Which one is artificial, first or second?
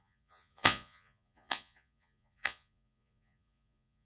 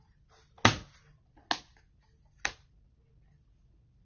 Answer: first